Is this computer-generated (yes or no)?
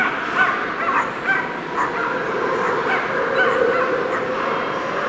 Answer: no